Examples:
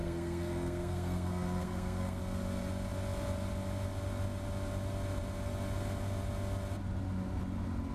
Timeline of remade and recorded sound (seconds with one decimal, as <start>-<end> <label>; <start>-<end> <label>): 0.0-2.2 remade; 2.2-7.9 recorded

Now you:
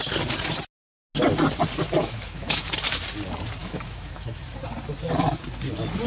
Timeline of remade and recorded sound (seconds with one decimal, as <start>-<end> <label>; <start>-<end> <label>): 0.0-2.0 recorded; 2.0-2.7 remade; 2.7-3.6 recorded; 3.6-4.4 remade; 4.4-6.1 recorded

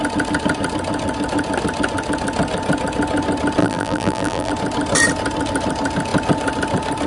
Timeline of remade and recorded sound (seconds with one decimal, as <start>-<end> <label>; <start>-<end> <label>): 0.0-3.6 recorded; 3.6-4.5 remade; 4.5-7.1 recorded

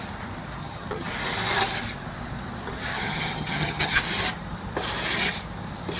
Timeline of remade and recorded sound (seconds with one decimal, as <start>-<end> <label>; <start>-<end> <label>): 0.0-0.6 recorded; 0.6-1.1 remade; 1.1-2.9 recorded; 2.9-4.0 remade; 4.0-6.0 recorded